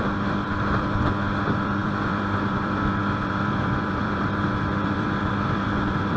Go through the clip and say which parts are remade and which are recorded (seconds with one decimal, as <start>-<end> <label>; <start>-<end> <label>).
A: 0.0-6.2 remade